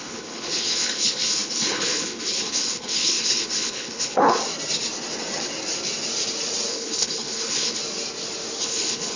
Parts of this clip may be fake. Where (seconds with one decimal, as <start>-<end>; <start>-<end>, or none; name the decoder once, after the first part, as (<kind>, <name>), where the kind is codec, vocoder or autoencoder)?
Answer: 0.0-4.4 (codec, HILCodec); 6.7-7.8; 8.6-9.2